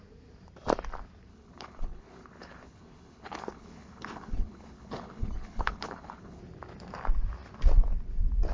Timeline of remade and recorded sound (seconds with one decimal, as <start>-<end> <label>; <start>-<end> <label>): 0.0-1.3 recorded; 1.3-6.4 remade; 6.4-8.5 recorded